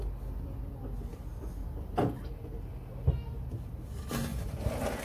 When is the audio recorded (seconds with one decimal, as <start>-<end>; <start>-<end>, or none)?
0.0-5.0